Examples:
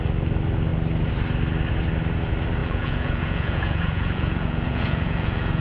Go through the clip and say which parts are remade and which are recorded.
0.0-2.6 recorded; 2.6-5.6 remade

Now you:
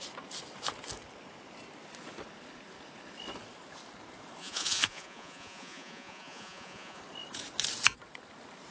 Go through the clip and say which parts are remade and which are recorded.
0.0-4.4 recorded; 4.4-7.0 remade; 7.0-8.7 recorded

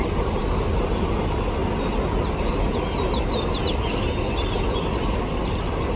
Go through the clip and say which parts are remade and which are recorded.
0.0-6.0 recorded